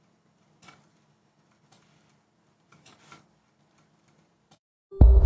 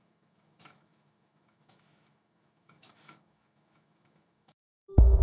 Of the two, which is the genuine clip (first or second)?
first